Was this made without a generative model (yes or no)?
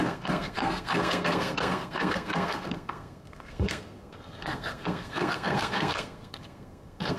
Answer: no